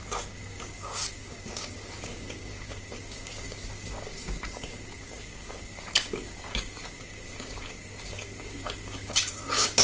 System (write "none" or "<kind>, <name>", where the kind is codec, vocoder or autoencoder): codec, DAC